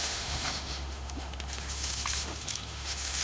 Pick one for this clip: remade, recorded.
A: remade